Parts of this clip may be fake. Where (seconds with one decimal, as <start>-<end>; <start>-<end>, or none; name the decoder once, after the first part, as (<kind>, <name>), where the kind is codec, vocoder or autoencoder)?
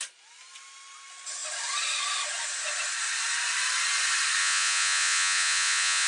4.4-6.1 (vocoder, Vocos)